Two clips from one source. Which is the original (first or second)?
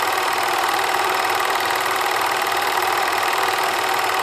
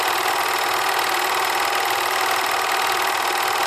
second